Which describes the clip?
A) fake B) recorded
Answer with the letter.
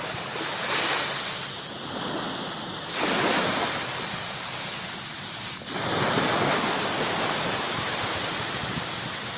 B